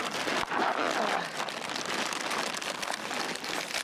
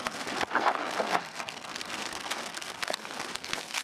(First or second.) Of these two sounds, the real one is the first